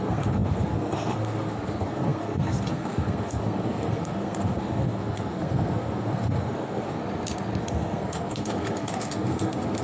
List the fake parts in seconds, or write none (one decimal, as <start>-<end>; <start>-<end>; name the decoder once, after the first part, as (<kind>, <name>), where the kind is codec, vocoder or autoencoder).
0.0-7.0 (codec, SNAC); 7.6-9.8